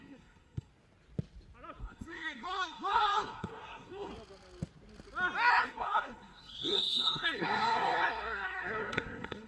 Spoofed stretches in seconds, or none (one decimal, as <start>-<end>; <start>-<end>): 0.0-0.7; 1.8-4.1; 5.5-9.5